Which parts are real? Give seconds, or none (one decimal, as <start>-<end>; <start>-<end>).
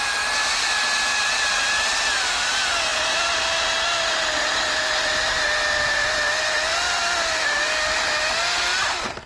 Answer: 0.0-9.3